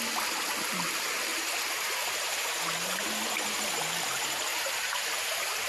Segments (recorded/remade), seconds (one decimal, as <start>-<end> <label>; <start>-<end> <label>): 0.0-1.3 recorded; 1.3-3.0 remade; 3.0-4.5 recorded; 4.5-5.7 remade